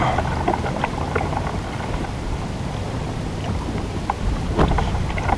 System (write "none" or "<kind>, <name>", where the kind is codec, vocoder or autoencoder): none